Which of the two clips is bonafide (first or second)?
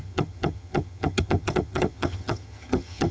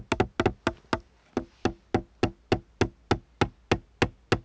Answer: second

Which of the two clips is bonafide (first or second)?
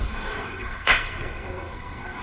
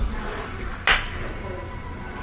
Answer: second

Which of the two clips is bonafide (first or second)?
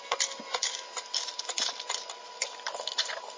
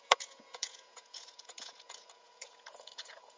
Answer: first